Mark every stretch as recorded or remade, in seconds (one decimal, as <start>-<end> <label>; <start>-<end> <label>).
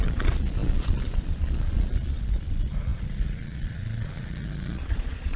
0.0-5.4 remade